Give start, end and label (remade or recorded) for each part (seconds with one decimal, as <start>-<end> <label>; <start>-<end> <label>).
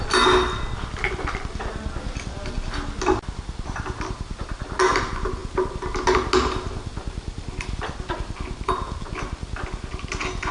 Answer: 0.0-10.5 recorded